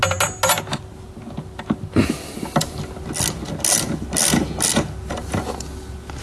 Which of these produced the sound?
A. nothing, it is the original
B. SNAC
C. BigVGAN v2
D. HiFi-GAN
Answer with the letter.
A